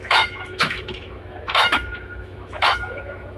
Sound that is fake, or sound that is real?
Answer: fake